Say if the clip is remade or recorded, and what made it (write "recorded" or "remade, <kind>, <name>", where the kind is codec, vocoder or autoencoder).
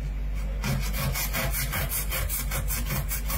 recorded